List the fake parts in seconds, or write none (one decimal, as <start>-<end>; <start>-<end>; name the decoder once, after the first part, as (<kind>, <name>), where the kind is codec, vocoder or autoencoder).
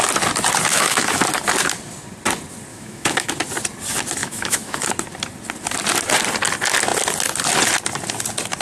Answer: 0.7-1.2 (autoencoder, DAC-VAE); 2.7-3.3; 4.2-4.9